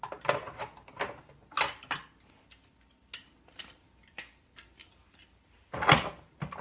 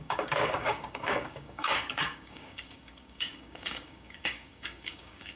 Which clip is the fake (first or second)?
second